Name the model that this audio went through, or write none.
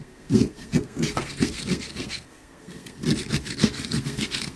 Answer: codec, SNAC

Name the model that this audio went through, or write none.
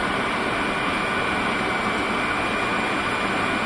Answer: none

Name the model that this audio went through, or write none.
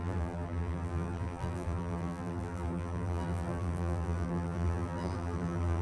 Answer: vocoder, BigVGAN v2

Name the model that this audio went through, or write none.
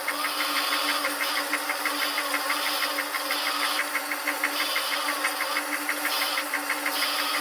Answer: vocoder, BigVGAN v2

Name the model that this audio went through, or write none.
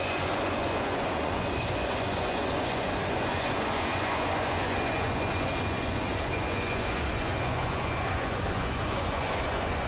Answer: vocoder, Vocos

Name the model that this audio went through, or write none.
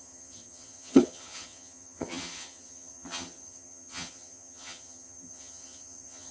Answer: vocoder, HiFi-GAN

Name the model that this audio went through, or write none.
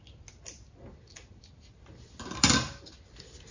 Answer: none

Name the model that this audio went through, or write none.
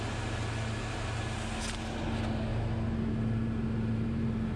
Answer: none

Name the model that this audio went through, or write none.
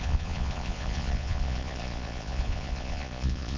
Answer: vocoder, Vocos